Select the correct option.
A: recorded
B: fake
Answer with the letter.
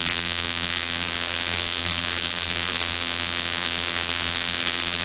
B